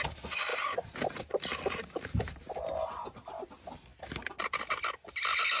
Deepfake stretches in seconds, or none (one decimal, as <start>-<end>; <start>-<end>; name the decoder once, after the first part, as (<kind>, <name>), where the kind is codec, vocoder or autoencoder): 0.5-3.4 (vocoder, BigVGAN v2)